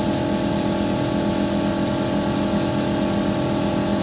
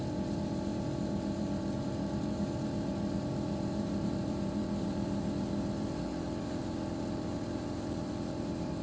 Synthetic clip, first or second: second